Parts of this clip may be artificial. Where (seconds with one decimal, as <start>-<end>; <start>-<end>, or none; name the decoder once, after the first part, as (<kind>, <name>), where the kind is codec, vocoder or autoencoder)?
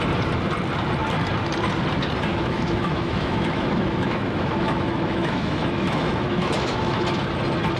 2.3-7.0 (autoencoder, DAC-VAE)